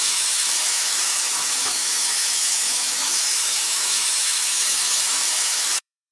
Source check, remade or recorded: remade